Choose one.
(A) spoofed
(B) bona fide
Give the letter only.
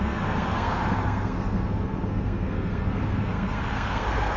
A